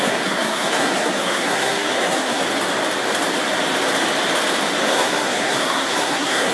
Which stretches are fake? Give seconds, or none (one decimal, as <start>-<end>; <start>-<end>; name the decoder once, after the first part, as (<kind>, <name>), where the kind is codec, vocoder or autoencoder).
0.0-2.4 (codec, SNAC); 4.8-6.5